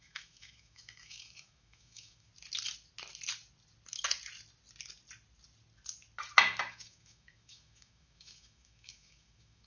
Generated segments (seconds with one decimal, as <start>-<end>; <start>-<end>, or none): 0.0-2.3; 6.7-9.7